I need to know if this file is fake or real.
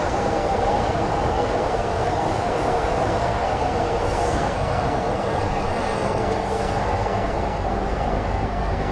fake